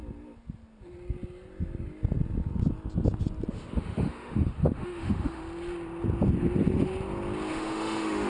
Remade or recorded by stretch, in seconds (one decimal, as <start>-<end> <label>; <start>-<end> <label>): 0.0-3.5 recorded; 3.5-5.4 remade; 5.4-7.5 recorded; 7.5-8.3 remade